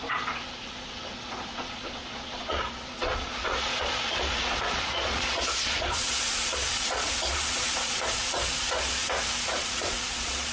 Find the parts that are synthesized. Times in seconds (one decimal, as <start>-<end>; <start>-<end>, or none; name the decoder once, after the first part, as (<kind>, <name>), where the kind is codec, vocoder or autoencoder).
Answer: 0.0-9.0 (vocoder, Vocos); 9.6-10.5